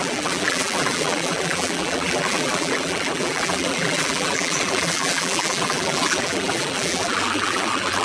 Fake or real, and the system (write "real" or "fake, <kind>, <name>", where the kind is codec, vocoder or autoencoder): fake, vocoder, BigVGAN v2